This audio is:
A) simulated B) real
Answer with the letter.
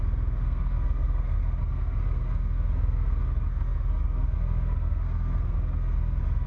A